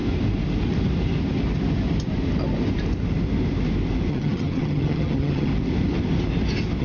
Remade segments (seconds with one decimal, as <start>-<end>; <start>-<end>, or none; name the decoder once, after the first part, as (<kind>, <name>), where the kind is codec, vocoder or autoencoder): 4.1-5.5 (vocoder, HiFi-GAN)